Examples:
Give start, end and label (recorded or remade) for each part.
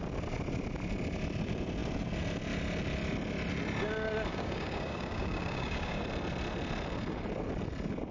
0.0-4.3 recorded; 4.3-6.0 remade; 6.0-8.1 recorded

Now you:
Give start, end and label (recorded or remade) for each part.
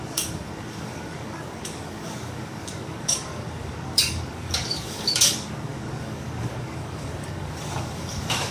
0.0-8.5 remade